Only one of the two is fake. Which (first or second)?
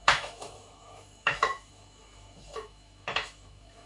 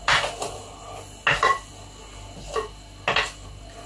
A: first